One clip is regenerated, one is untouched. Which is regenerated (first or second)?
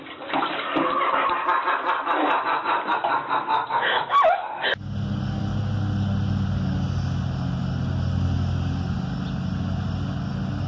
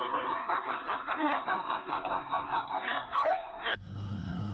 second